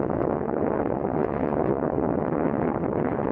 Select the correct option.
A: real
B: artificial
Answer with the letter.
B